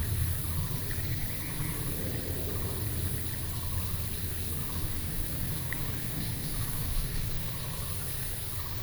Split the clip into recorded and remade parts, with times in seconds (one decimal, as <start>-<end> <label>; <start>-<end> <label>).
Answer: 0.0-4.6 recorded; 4.6-7.5 remade; 7.5-8.8 recorded